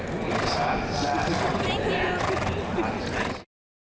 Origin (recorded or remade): recorded